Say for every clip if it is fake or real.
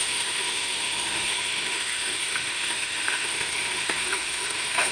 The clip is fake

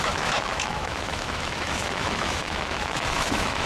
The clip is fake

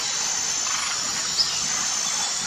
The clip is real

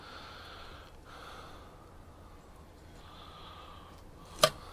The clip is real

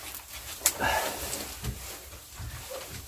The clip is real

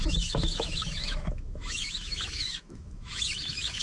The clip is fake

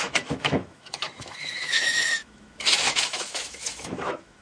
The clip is fake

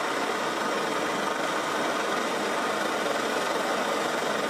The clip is real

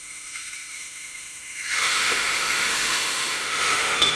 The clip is fake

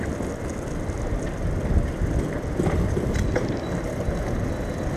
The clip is real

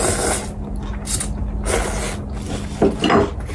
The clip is real